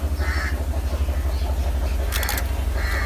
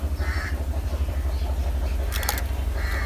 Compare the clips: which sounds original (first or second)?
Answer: first